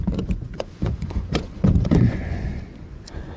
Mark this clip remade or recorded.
remade